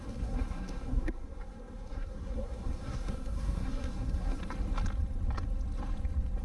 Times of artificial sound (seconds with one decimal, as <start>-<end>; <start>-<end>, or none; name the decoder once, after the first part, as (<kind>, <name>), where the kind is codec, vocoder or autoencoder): 0.0-4.4 (codec, SNAC)